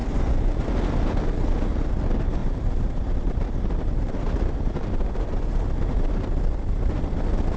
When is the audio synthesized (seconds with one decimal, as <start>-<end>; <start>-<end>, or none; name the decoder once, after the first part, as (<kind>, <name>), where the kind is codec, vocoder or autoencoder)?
0.0-0.7 (vocoder, BigVGAN v2); 2.4-7.0